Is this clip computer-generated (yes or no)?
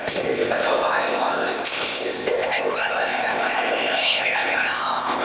yes